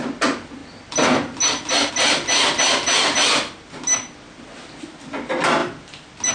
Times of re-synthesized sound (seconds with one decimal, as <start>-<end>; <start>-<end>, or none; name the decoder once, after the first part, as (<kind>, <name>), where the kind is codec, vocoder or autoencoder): none